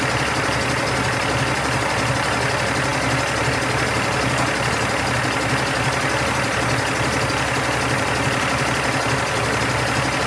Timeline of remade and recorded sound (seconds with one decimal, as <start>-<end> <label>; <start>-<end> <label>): 0.0-10.3 recorded